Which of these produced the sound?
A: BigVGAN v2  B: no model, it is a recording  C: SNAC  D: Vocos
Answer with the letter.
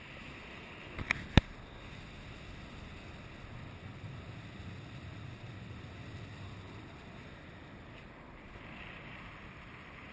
B